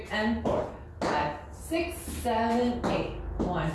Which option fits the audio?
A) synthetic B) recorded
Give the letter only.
B